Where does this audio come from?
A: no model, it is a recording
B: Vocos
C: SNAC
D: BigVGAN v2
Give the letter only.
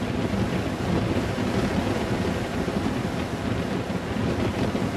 A